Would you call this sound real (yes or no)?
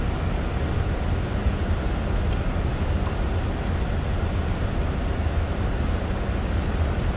yes